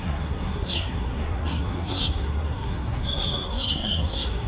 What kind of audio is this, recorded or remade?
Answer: remade